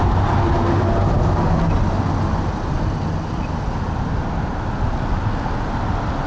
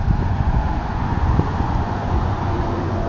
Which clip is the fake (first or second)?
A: second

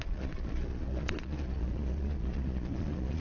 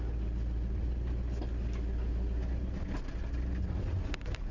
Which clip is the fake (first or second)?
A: first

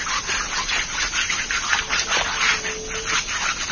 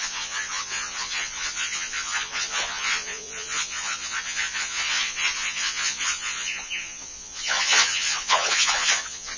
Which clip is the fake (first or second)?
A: second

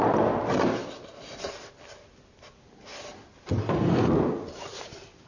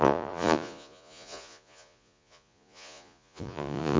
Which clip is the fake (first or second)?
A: second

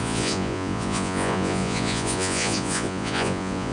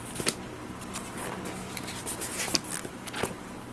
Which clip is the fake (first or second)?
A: first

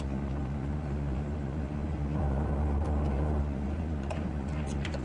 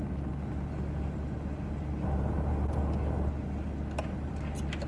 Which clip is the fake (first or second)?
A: first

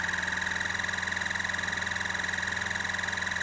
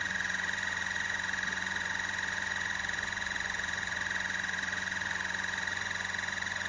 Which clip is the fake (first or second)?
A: second